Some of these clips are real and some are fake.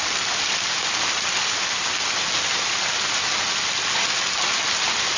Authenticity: real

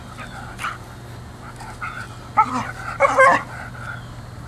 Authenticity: real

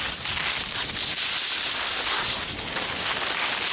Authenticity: real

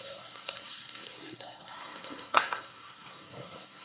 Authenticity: fake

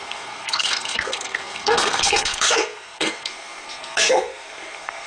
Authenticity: fake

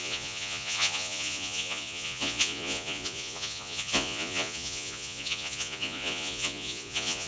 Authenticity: fake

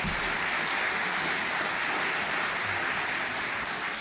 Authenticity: real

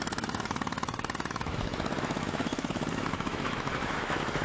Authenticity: fake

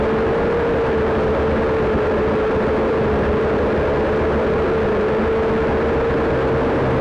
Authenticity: real